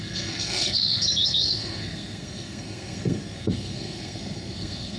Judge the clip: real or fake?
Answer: fake